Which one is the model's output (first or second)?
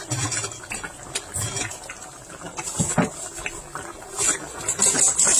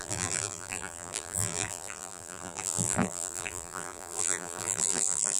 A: second